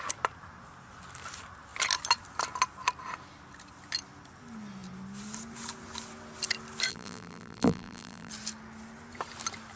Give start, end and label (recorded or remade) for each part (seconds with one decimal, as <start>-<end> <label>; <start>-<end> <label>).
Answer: 0.0-6.9 recorded; 6.9-8.3 remade; 8.3-9.8 recorded